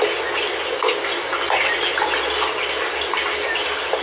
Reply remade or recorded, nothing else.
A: recorded